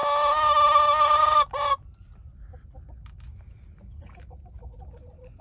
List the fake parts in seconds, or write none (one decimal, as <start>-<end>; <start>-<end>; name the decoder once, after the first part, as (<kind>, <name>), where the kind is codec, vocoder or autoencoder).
none